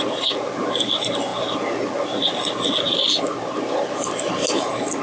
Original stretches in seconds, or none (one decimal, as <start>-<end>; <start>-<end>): 0.0-5.0